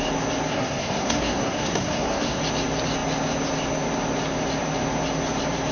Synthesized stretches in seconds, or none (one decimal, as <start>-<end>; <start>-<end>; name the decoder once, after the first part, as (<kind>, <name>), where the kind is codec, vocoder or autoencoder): 0.5-2.4 (codec, SNAC)